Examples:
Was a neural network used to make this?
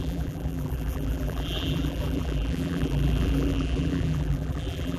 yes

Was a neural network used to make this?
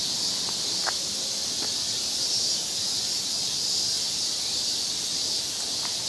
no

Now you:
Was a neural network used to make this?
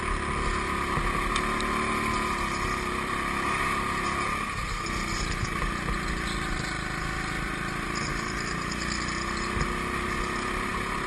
no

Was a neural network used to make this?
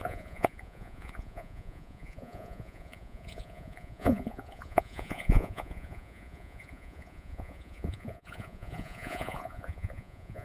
yes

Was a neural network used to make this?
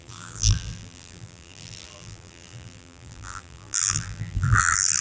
yes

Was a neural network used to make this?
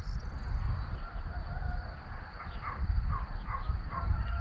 no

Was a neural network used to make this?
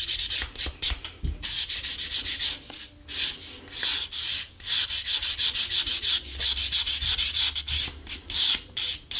no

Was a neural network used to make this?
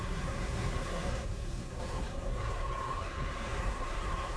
yes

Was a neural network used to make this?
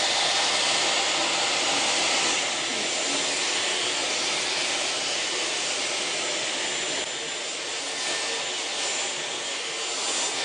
no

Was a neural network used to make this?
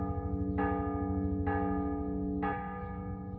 no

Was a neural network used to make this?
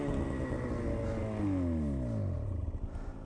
no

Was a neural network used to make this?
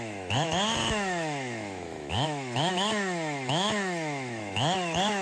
yes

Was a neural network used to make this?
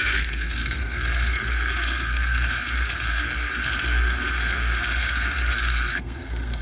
yes